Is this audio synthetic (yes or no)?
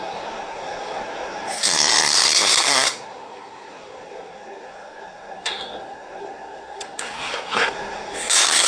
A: yes